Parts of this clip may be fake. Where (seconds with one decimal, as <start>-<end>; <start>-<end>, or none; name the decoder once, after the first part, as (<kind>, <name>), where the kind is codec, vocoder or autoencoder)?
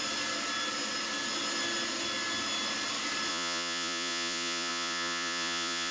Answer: 3.3-5.9 (vocoder, Vocos)